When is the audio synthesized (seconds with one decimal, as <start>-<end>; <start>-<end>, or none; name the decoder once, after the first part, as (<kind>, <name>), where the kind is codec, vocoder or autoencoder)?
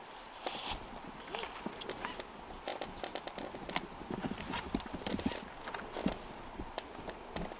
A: none